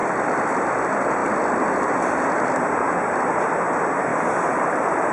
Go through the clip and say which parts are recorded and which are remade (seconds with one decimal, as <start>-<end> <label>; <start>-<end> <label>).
0.0-0.5 remade; 0.5-4.1 recorded; 4.1-5.1 remade